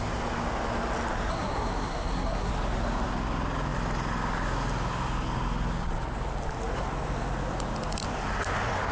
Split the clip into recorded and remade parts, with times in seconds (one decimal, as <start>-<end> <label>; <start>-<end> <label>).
0.0-1.3 recorded; 1.3-2.5 remade; 2.5-8.9 recorded